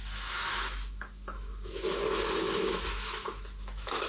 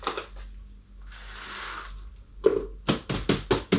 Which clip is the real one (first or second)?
second